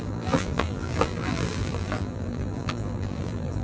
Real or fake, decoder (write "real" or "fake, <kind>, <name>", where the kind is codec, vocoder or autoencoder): fake, vocoder, BigVGAN v2